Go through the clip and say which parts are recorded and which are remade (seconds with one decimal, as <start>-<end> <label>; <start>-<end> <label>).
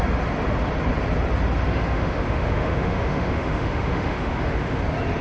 0.0-1.7 recorded; 1.7-4.8 remade; 4.8-5.2 recorded